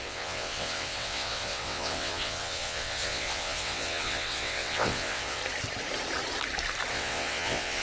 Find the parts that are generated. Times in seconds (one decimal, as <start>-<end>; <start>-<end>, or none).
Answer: 0.0-5.4; 6.9-7.8